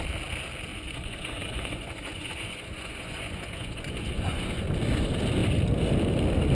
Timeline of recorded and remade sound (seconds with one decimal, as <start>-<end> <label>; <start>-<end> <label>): 0.0-0.7 recorded; 0.7-4.6 remade; 4.6-6.5 recorded